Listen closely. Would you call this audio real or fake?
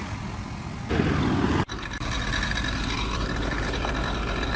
real